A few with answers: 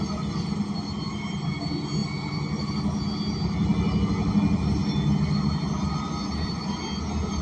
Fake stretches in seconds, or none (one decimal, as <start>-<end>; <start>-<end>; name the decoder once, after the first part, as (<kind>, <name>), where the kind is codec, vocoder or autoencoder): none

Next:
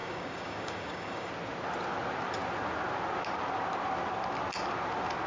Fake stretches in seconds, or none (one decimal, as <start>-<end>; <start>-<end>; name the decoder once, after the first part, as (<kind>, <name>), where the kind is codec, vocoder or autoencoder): 0.0-1.3 (codec, DAC)

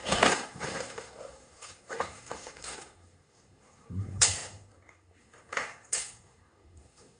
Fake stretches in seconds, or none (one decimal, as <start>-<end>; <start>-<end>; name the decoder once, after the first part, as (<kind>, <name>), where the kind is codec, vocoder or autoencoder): 0.0-7.2 (codec, SNAC)

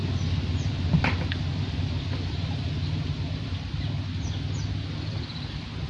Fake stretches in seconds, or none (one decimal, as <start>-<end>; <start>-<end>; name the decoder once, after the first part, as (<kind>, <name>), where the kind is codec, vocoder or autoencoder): none